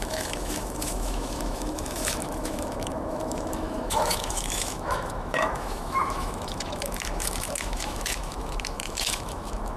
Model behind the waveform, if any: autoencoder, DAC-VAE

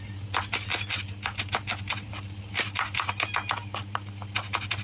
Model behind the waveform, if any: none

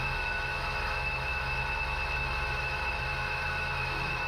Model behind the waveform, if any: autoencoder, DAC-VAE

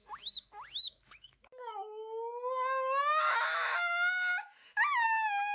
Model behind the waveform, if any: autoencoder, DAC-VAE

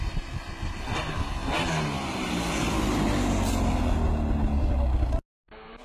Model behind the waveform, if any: none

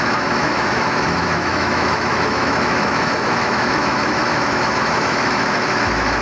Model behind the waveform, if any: autoencoder, DAC-VAE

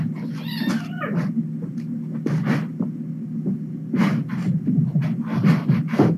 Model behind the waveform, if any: none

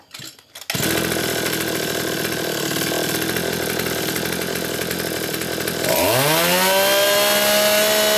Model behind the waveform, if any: none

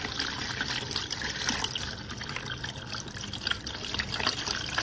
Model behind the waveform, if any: none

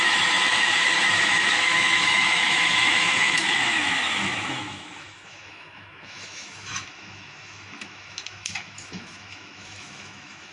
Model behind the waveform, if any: autoencoder, DAC-VAE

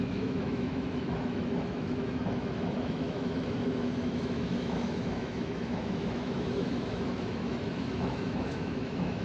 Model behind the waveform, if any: autoencoder, DAC-VAE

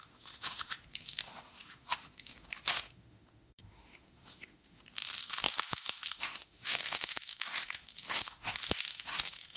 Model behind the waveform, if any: autoencoder, DAC-VAE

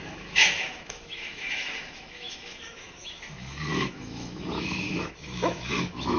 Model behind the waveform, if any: autoencoder, DAC-VAE